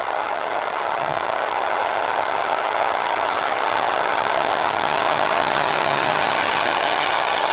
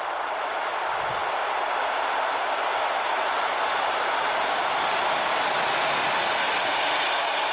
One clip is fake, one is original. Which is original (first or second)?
second